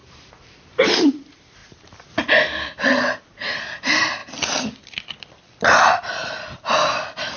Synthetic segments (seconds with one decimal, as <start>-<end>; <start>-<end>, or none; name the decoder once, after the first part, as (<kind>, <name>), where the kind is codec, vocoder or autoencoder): 0.0-1.6 (vocoder, BigVGAN v2); 3.2-4.2; 4.8-7.4